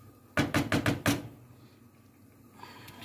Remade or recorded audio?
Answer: recorded